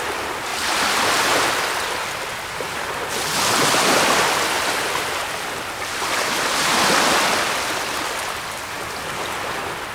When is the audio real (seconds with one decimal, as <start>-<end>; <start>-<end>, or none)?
0.0-9.9